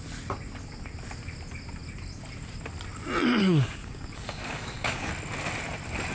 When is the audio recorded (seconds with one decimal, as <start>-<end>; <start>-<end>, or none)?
0.0-3.4; 5.1-6.1